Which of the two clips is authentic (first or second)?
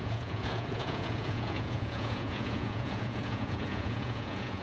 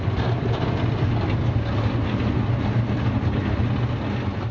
second